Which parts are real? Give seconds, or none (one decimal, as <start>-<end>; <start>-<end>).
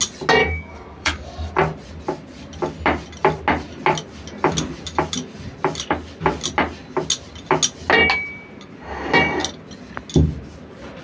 0.0-0.4; 1.5-11.0